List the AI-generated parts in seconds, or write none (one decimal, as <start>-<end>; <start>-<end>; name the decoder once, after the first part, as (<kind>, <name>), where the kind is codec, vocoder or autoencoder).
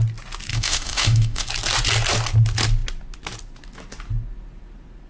0.5-1.5 (autoencoder, DAC-VAE)